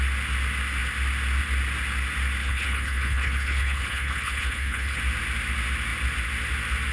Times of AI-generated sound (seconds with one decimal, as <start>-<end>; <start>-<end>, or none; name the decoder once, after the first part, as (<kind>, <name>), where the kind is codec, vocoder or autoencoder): 2.4-5.0 (codec, HILCodec)